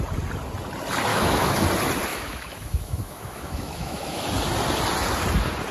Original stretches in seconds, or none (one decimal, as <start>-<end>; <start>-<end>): 0.0-1.1; 1.6-2.1; 4.2-5.7